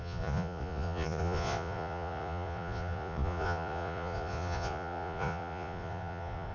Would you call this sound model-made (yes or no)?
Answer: yes